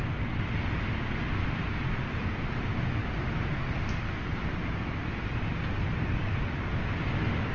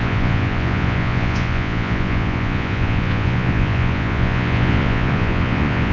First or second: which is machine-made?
second